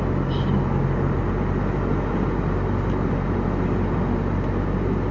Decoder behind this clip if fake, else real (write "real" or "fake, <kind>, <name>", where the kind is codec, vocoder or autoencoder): real